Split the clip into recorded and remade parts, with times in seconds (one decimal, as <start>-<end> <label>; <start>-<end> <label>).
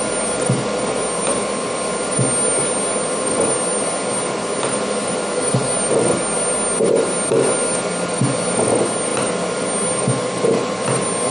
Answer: 0.0-11.3 recorded